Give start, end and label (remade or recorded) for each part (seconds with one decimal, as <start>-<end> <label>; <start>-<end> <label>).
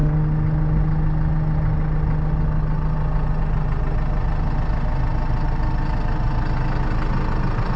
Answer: 0.0-7.8 recorded